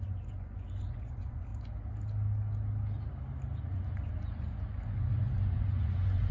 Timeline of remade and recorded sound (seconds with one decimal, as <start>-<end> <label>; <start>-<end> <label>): 0.0-1.5 remade; 1.5-3.6 recorded; 3.6-6.3 remade